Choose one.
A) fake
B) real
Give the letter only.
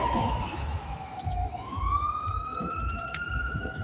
A